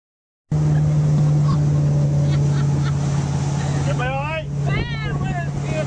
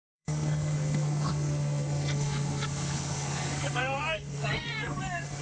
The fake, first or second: second